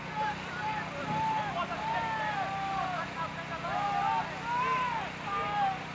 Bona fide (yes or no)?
yes